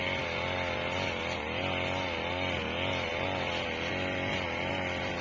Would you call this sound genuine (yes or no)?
yes